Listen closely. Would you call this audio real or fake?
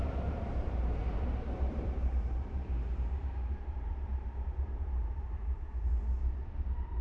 fake